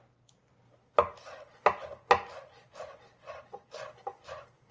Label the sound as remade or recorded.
recorded